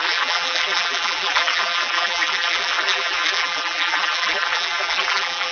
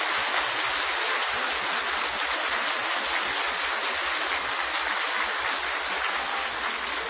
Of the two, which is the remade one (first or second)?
first